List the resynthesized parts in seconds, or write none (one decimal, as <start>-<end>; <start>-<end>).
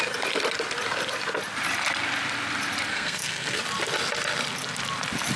2.9-3.6